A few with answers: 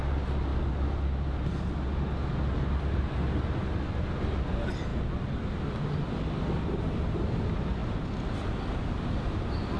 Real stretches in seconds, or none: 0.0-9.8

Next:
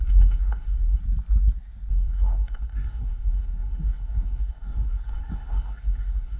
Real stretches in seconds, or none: 1.0-1.9

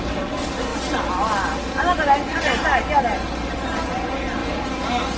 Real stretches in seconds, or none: 0.0-5.2

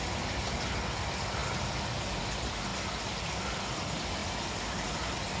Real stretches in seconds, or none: 0.0-5.4

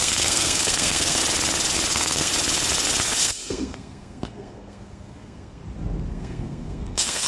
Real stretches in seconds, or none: 1.2-1.9; 2.3-3.2; 5.6-6.1

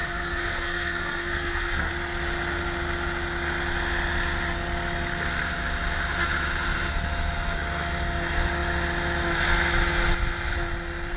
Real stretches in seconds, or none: 1.9-11.2

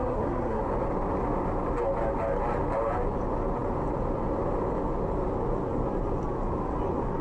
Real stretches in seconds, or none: 0.6-7.2